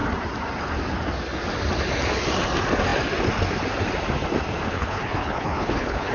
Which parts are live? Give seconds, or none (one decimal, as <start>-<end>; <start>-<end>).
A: 0.0-4.7